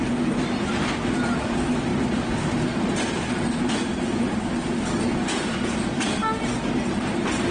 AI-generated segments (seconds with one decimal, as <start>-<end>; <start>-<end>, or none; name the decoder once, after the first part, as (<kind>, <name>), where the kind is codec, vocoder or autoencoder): none